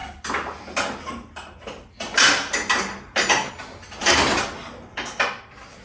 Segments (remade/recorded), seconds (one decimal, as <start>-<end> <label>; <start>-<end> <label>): 0.0-5.8 recorded

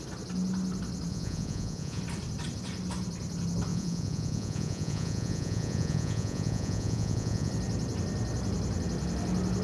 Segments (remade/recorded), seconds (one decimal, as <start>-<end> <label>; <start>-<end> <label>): 0.0-1.1 recorded; 1.1-2.0 remade; 2.0-3.7 recorded; 3.7-7.5 remade; 7.5-9.6 recorded

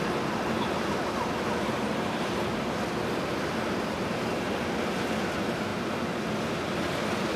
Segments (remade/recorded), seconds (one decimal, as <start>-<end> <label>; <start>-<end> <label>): 0.0-7.4 recorded

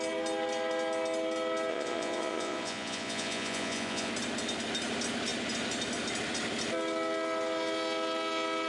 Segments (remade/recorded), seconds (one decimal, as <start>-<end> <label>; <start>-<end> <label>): 0.0-1.7 recorded; 1.7-4.1 remade; 4.1-8.7 recorded